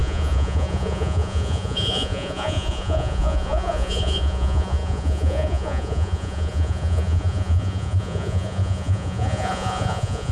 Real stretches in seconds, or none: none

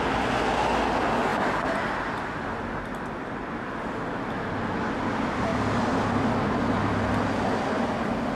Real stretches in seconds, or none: 0.0-8.3

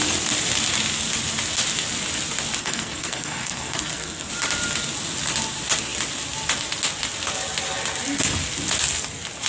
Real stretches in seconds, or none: 0.0-2.6; 4.3-9.5

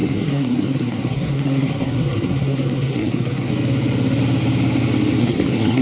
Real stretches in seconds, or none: 3.5-5.2

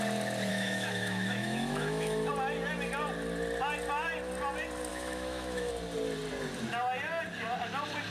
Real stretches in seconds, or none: 0.0-0.5; 2.3-4.9; 5.7-8.1

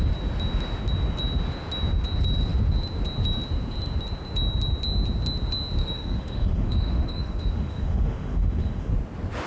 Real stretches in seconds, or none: 0.0-5.8; 8.9-9.5

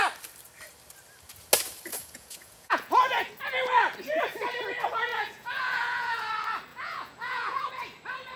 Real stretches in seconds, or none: 0.0-1.9; 3.3-5.1; 6.3-6.7; 7.7-8.4